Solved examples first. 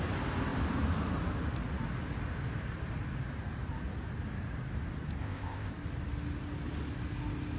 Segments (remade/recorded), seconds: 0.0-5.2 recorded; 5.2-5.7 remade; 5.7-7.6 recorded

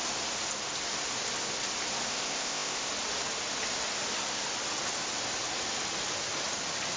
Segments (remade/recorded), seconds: 0.0-2.1 recorded; 2.1-2.9 remade; 2.9-7.0 recorded

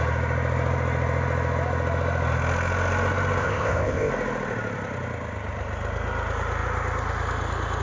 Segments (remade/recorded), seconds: 0.0-3.4 recorded; 3.4-4.1 remade; 4.1-7.8 recorded

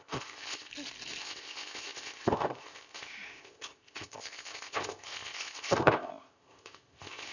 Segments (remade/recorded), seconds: 0.0-0.7 remade; 0.7-1.2 recorded; 1.2-7.3 remade